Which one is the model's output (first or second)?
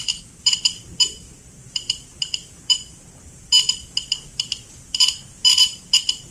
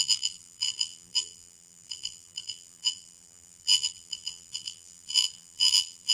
second